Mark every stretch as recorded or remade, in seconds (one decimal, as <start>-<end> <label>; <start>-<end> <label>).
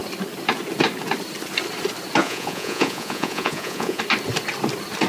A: 0.0-2.2 recorded; 2.2-4.0 remade; 4.0-5.1 recorded